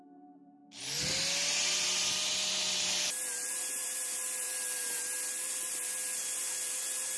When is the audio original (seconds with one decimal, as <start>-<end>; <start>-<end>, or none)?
0.6-3.5